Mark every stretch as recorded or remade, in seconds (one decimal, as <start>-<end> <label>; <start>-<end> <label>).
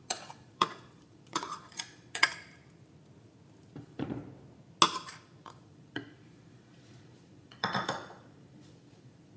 0.0-2.3 remade; 2.3-3.8 recorded; 3.8-4.2 remade; 4.2-5.2 recorded; 5.2-9.4 remade